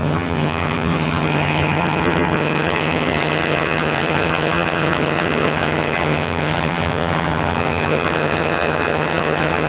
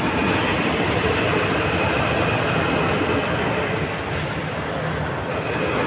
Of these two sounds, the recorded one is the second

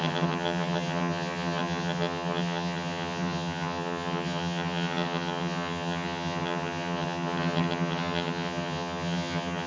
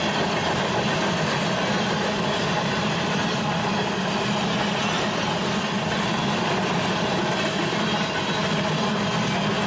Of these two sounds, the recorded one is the second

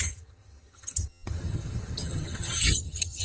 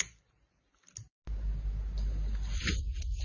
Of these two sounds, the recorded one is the second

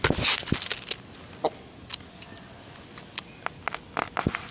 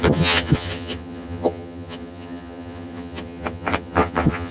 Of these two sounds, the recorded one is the first